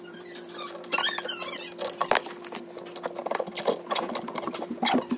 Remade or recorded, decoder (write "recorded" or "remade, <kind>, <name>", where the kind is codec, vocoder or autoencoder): recorded